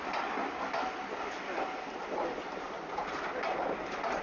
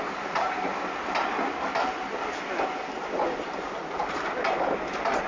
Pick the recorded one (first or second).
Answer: second